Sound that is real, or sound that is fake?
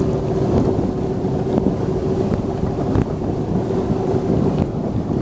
real